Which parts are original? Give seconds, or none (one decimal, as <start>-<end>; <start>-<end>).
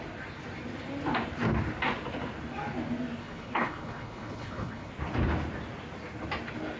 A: 0.0-3.2; 4.9-6.8